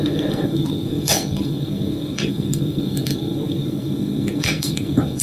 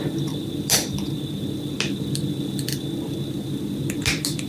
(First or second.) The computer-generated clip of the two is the first